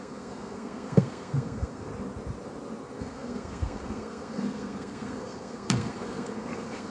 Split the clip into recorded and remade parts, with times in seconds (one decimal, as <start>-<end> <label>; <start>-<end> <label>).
0.0-1.9 remade; 1.9-3.0 recorded; 3.0-6.9 remade